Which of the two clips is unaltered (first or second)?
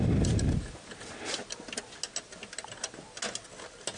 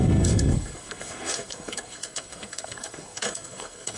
first